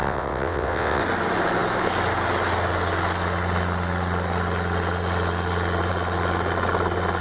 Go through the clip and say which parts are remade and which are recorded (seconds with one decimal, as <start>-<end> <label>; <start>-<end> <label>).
0.0-1.0 remade; 1.0-7.2 recorded